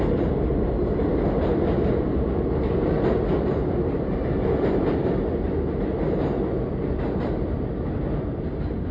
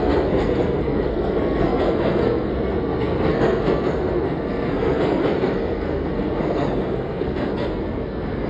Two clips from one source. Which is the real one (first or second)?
first